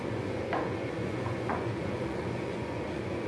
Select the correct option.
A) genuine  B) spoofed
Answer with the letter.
B